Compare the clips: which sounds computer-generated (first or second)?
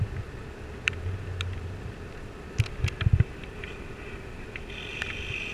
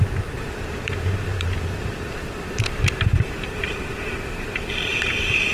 second